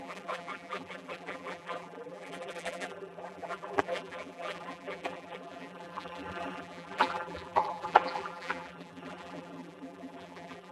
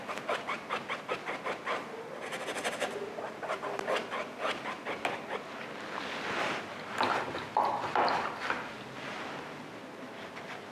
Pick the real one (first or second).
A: second